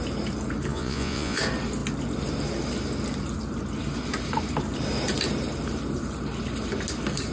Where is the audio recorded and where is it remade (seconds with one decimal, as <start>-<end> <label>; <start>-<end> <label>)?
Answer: 0.0-0.7 recorded; 0.7-1.4 remade; 1.4-7.3 recorded